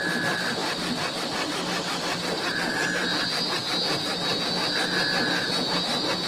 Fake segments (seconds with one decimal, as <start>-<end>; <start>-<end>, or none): none